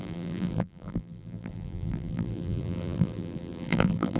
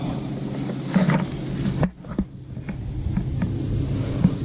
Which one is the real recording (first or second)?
second